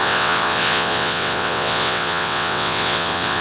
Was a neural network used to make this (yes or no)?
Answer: yes